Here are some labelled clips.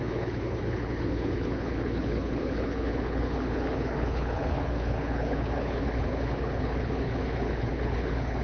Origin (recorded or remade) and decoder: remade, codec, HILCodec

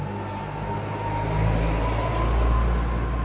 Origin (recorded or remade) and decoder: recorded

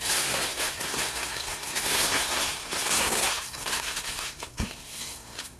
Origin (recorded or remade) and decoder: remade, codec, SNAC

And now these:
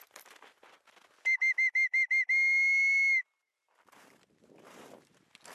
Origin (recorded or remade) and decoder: recorded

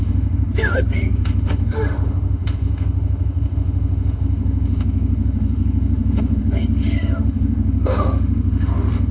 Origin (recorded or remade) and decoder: remade, autoencoder, DAC-VAE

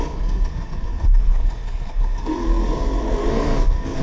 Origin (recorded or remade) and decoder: remade, codec, SNAC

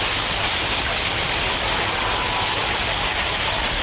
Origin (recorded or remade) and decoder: recorded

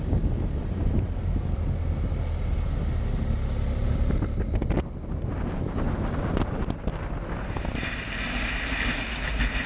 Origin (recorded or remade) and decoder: recorded